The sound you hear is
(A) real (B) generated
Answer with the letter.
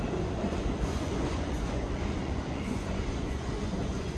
B